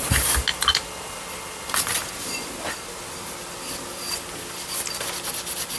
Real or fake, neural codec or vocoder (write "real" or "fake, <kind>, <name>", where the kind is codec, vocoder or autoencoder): real